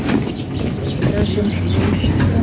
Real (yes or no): yes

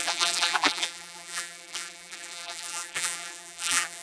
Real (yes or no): no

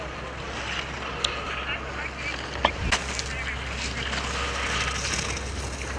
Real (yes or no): yes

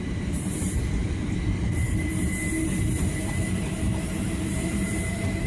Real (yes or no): no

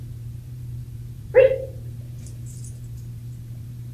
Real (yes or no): no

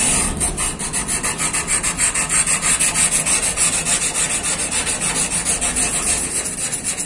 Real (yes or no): yes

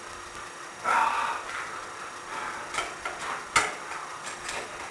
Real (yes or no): yes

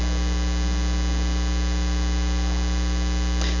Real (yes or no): yes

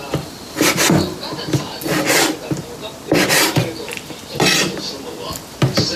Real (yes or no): no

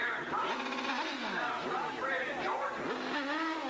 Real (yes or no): yes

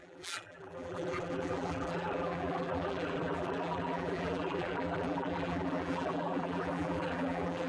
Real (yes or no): no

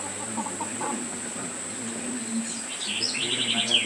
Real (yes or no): yes